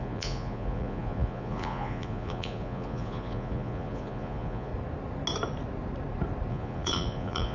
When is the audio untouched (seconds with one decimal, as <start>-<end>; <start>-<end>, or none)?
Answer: 4.7-6.5